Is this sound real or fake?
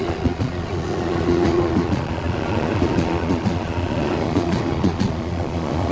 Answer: fake